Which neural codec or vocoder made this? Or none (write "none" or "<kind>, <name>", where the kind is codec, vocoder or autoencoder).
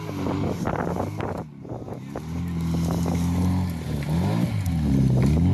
none